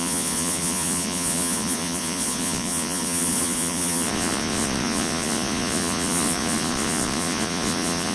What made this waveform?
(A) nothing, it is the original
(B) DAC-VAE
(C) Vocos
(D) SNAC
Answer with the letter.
C